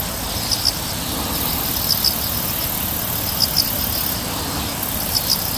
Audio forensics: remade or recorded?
recorded